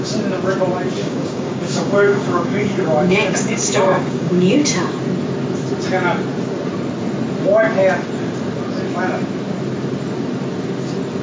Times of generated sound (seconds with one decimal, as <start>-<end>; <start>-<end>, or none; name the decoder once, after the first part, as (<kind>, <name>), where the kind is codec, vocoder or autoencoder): 1.0-4.9 (codec, DAC)